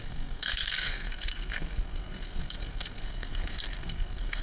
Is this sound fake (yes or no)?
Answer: yes